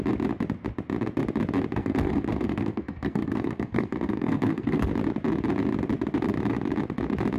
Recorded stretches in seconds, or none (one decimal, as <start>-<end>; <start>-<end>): 0.0-1.8; 4.9-7.4